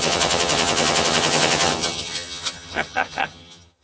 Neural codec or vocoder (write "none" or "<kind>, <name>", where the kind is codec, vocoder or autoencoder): vocoder, HiFi-GAN